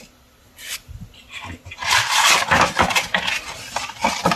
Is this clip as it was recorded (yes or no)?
yes